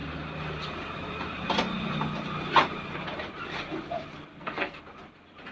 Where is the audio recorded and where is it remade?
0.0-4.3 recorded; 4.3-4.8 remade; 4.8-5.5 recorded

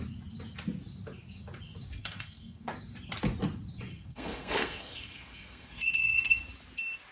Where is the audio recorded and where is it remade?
0.0-2.0 recorded; 2.0-2.7 remade; 2.7-3.9 recorded; 3.9-6.4 remade; 6.4-7.1 recorded

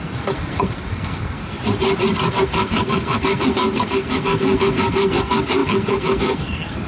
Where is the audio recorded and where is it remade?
0.0-1.6 remade; 1.6-2.3 recorded; 2.3-6.9 remade

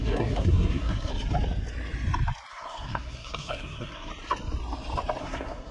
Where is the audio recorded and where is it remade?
0.0-1.1 remade; 1.1-2.5 recorded; 2.5-4.1 remade; 4.1-5.2 recorded; 5.2-5.7 remade

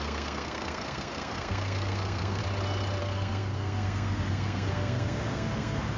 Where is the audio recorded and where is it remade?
0.0-2.4 remade; 2.4-3.0 recorded; 3.0-6.0 remade